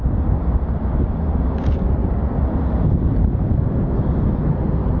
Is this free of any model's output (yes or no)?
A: yes